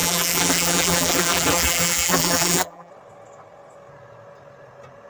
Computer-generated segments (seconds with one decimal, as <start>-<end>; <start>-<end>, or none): 0.0-2.9